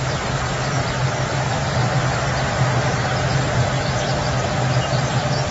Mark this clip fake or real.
fake